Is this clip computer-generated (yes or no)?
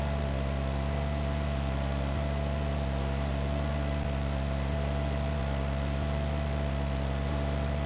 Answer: no